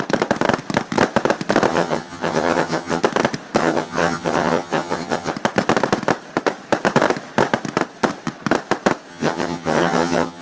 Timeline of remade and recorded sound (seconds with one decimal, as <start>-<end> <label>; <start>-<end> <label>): 0.0-1.7 recorded; 1.7-3.0 remade; 3.0-3.6 recorded; 3.6-5.3 remade; 5.3-9.1 recorded; 9.1-10.4 remade